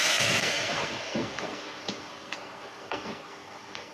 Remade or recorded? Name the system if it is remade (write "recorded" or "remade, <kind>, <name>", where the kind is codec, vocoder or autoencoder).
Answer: remade, codec, SNAC